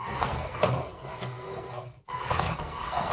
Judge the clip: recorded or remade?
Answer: remade